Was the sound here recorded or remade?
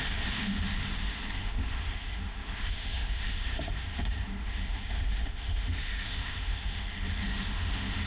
remade